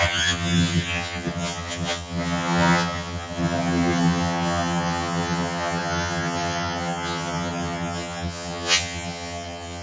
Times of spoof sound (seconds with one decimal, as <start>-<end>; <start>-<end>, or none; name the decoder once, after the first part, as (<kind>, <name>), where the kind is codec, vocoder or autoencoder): 0.0-9.8 (vocoder, HiFi-GAN)